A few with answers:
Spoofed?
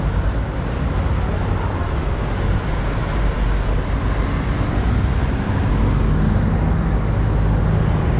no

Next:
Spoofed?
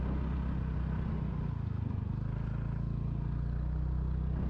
no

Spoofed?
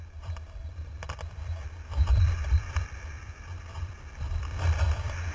yes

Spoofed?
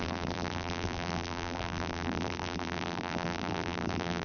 yes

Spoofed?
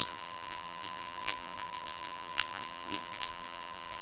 yes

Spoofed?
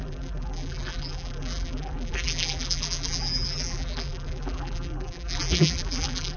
yes